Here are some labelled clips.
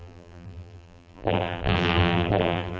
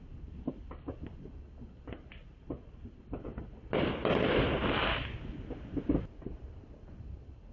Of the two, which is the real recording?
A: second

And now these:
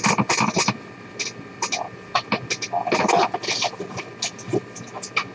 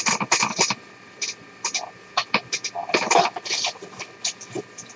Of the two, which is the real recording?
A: first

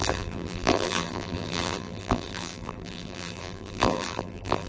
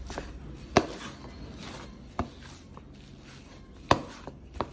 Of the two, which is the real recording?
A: second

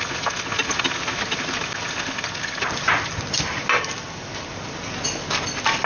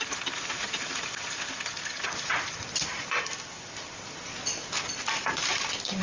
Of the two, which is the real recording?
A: first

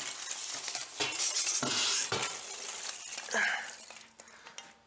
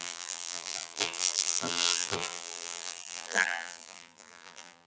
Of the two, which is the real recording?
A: first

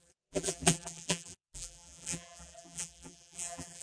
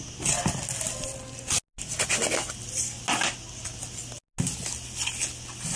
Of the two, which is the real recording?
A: second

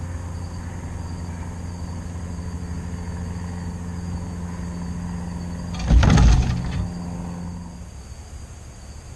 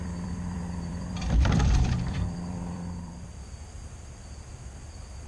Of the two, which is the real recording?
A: first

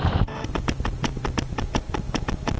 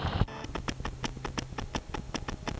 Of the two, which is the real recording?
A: second